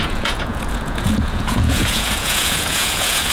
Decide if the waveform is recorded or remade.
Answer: remade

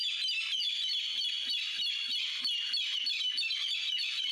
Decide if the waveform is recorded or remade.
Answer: recorded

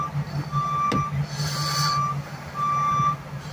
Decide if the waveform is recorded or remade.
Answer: recorded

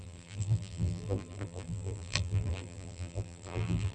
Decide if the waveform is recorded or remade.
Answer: remade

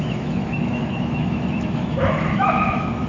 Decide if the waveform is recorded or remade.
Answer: remade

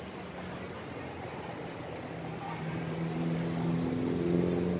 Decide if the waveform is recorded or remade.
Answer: recorded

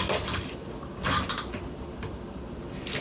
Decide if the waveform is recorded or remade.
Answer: recorded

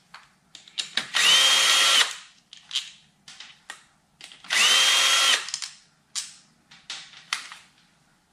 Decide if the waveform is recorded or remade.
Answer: recorded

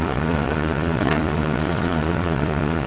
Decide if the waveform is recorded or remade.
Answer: remade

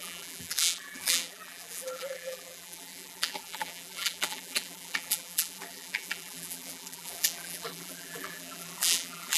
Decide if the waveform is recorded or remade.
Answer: remade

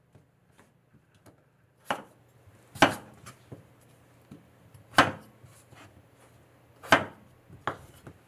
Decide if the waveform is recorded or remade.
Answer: recorded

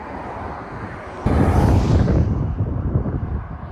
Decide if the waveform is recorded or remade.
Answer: recorded